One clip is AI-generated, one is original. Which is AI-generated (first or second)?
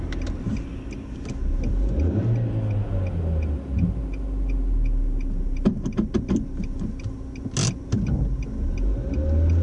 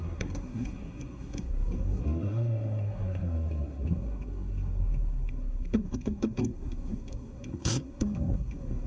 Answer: second